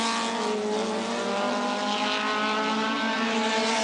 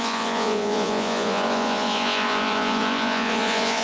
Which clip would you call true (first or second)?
first